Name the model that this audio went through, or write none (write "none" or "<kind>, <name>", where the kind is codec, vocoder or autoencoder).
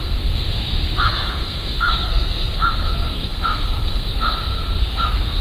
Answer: codec, SNAC